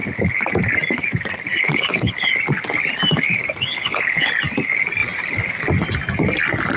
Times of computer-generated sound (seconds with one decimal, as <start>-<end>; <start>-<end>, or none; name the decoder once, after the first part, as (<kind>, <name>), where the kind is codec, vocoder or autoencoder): 1.5-2.3 (codec, HILCodec); 3.7-4.3